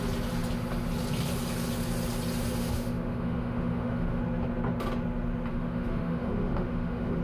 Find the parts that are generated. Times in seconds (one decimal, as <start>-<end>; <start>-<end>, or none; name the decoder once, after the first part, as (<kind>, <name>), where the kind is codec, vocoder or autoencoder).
2.6-4.2 (autoencoder, DAC-VAE); 5.5-7.2